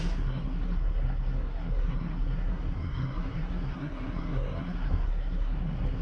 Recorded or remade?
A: remade